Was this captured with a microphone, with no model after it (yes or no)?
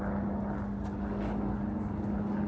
yes